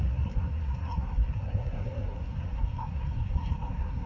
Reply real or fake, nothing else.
fake